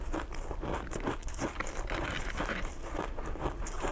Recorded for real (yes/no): yes